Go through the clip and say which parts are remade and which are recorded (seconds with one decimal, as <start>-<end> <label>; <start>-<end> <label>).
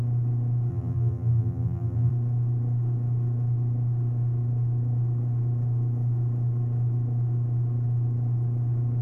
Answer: 0.0-0.7 recorded; 0.7-2.1 remade; 2.1-9.0 recorded